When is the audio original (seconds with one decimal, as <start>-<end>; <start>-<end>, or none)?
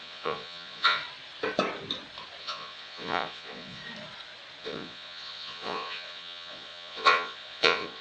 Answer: 1.0-2.4; 3.8-4.6